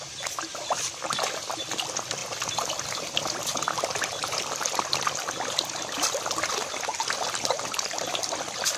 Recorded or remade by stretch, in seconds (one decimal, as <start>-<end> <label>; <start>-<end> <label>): 0.0-6.9 recorded; 6.9-8.8 remade